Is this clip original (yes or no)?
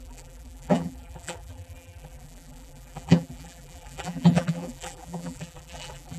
no